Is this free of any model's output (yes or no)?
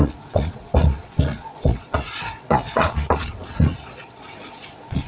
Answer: no